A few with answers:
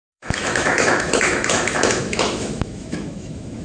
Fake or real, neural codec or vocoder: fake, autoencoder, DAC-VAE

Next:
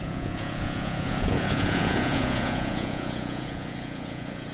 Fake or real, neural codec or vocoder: fake, vocoder, Vocos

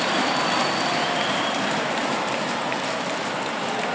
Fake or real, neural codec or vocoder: real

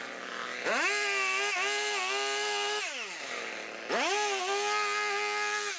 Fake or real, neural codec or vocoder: real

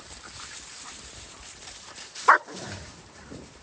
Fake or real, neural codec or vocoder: fake, vocoder, BigVGAN v2